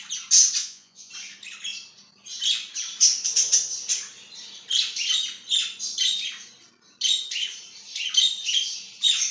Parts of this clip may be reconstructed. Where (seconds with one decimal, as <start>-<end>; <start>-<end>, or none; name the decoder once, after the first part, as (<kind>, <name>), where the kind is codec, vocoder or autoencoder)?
0.6-1.1 (vocoder, Vocos)